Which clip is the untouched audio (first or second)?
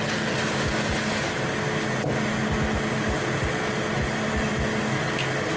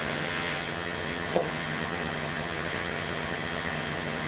first